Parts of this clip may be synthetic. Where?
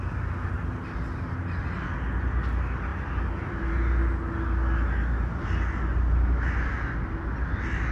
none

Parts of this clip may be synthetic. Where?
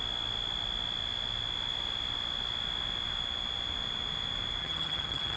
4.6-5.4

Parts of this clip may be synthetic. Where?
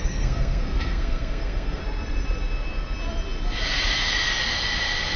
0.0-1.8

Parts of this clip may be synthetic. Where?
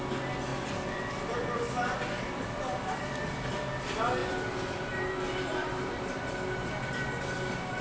0.5-3.5; 4.2-7.8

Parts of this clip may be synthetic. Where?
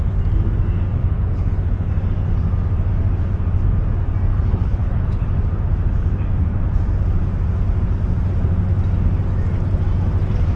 1.0-1.9; 4.3-5.3